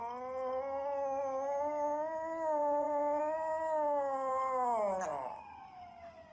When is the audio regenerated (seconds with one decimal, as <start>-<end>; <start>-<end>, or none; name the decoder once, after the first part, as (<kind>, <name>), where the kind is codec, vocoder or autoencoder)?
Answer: 2.6-3.2 (vocoder, WaveNeXt)